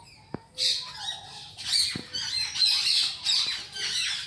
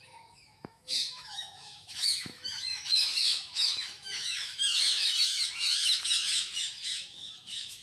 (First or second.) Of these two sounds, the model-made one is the second